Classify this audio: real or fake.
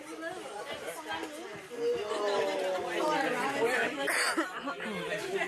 real